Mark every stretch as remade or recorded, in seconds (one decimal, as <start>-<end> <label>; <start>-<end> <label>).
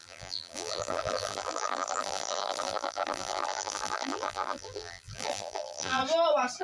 0.0-6.0 remade; 6.0-6.6 recorded